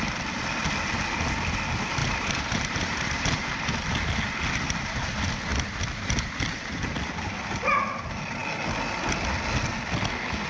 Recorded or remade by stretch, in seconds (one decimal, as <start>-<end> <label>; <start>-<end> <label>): 0.0-2.0 recorded; 2.0-3.5 remade; 3.5-10.5 recorded